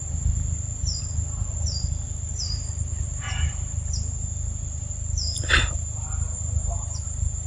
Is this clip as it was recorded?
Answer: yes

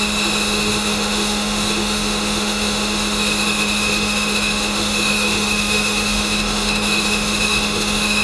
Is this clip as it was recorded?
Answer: no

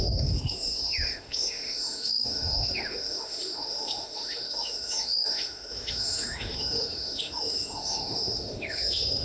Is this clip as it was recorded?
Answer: no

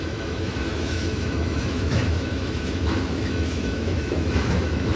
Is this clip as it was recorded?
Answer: no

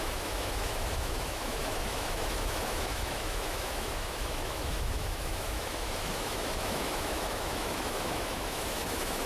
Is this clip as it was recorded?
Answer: no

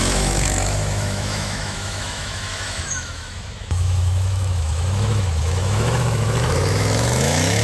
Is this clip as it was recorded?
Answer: no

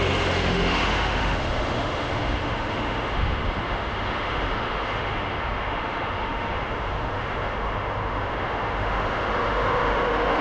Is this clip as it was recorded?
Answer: no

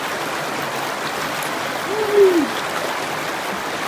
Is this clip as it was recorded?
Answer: yes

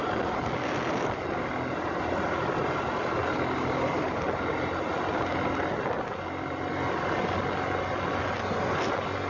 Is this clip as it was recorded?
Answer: yes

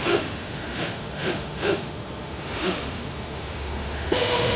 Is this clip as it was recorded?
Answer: no